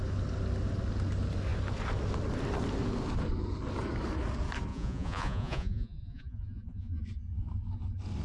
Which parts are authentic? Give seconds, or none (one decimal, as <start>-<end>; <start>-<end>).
0.0-4.7; 7.0-8.2